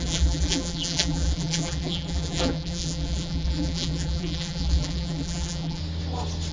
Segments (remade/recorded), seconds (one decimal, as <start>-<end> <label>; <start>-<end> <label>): 0.0-5.8 remade; 5.8-6.5 recorded